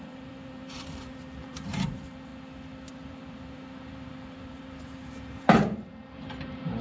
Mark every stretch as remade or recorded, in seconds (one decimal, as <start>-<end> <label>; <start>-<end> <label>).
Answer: 0.0-2.3 remade; 2.3-2.9 recorded; 2.9-6.8 remade